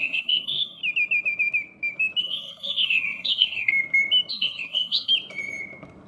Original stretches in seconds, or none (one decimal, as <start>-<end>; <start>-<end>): 0.8-2.2; 3.7-4.3; 5.1-6.1